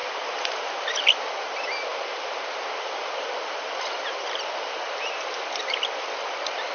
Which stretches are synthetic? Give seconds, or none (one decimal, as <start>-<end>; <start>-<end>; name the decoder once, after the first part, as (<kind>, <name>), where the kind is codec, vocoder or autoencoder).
0.0-1.3 (vocoder, BigVGAN v2); 1.9-5.4